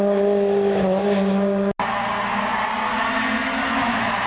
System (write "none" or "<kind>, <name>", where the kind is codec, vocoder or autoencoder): none